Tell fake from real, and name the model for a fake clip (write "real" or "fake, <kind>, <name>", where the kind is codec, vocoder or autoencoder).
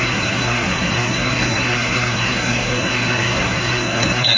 fake, codec, SNAC